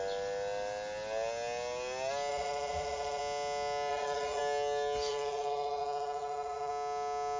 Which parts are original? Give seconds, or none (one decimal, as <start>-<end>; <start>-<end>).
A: 0.0-2.3; 3.2-3.9; 4.4-5.1; 6.7-7.4